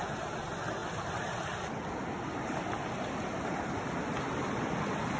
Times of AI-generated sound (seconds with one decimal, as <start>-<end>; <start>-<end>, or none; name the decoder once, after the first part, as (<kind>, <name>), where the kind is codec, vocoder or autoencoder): none